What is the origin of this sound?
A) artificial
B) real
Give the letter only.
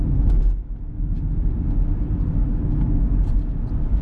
B